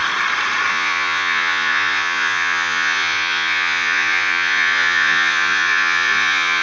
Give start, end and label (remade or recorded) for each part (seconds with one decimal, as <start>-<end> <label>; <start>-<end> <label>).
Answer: 0.0-0.7 recorded; 0.7-6.6 remade

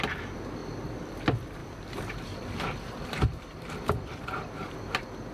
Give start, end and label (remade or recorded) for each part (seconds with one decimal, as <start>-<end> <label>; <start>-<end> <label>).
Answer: 0.0-0.6 recorded; 0.6-1.1 remade; 1.1-1.6 recorded; 1.6-4.8 remade; 4.8-5.3 recorded

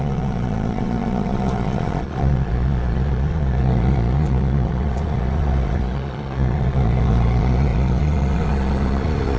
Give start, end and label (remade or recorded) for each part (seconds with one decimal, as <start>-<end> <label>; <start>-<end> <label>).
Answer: 0.0-9.4 remade

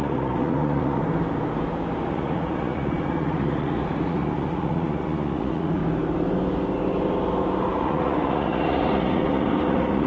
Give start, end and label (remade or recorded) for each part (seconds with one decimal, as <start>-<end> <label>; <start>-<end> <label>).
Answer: 0.0-1.0 remade; 1.0-2.1 recorded; 2.1-5.8 remade; 5.8-7.7 recorded; 7.7-10.1 remade

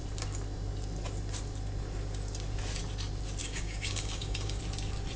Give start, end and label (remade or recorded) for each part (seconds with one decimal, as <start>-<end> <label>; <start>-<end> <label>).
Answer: 0.0-3.4 recorded; 3.4-4.6 remade; 4.6-5.2 recorded

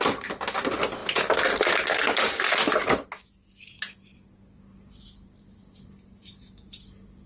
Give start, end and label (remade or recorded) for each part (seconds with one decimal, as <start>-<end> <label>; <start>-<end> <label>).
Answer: 0.0-7.3 recorded

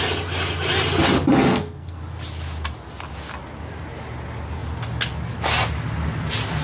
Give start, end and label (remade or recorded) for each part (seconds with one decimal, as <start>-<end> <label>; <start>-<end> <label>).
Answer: 0.0-1.5 recorded; 1.5-2.0 remade; 2.0-6.6 recorded

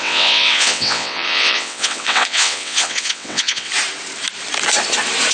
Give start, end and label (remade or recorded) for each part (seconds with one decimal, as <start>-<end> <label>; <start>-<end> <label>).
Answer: 0.0-3.7 remade; 3.7-5.3 recorded